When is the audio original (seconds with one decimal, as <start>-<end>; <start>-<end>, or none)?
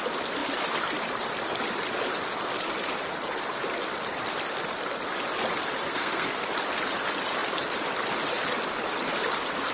0.0-5.9; 6.4-9.7